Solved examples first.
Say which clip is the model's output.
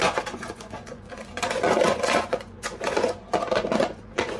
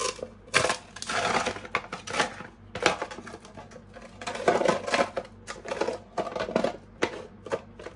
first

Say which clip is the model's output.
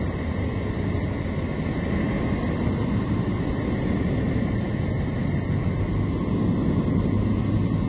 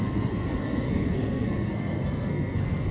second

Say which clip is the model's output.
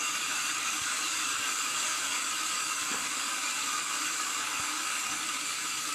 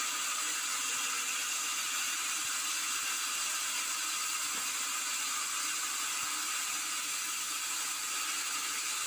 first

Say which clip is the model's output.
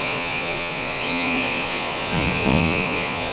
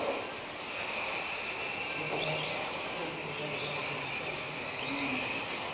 first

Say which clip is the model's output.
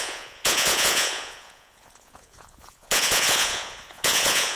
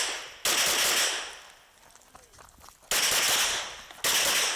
first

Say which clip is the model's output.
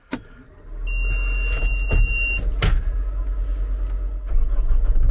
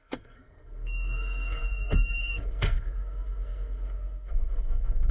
second